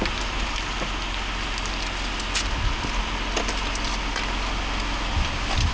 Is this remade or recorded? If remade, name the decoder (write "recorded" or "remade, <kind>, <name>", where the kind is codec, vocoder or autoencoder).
recorded